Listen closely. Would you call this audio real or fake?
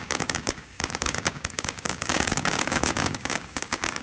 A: fake